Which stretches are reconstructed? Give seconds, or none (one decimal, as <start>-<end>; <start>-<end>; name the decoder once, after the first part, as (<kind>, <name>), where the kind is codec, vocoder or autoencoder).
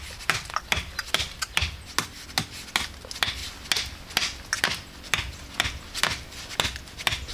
none